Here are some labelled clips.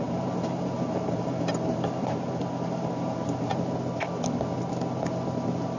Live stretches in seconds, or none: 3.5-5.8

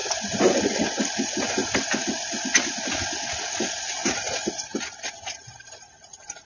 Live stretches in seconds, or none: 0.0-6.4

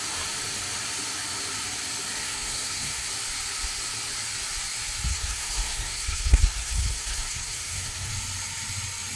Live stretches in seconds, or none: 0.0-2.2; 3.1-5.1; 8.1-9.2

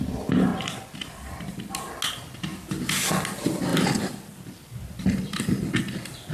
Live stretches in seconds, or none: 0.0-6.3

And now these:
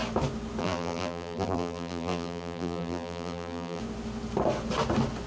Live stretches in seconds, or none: 0.0-0.6; 3.8-5.3

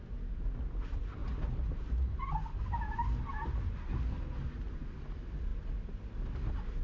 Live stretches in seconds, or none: 0.0-6.8

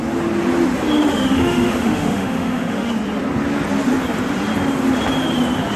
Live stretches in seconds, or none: 0.0-1.1; 2.9-5.8